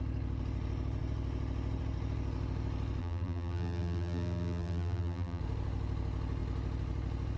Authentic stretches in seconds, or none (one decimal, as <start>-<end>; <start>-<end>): 0.0-3.0; 5.4-7.4